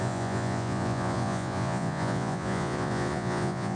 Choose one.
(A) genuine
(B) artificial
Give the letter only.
B